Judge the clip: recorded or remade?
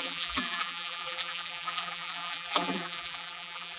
remade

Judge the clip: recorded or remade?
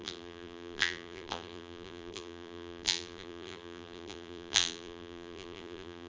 remade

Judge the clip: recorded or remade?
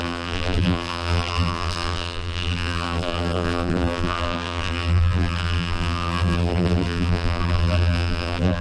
remade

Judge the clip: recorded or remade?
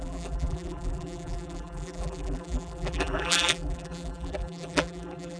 remade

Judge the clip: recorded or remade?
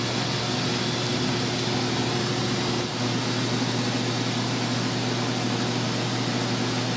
recorded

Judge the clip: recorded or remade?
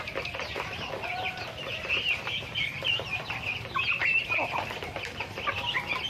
remade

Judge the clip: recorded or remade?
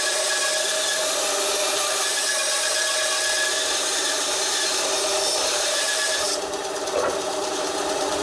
remade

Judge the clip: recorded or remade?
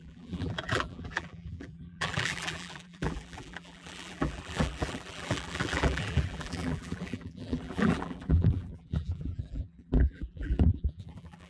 remade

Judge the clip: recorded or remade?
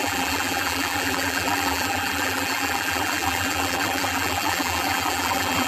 remade